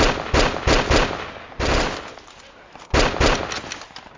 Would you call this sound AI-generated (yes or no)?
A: no